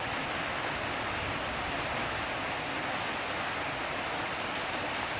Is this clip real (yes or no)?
yes